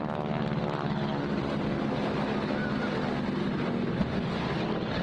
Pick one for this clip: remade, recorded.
recorded